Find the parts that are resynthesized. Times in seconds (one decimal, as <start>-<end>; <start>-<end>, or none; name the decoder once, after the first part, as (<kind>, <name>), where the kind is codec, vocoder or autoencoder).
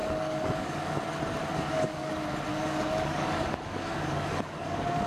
0.0-1.0 (codec, DAC); 1.4-2.1; 2.5-5.1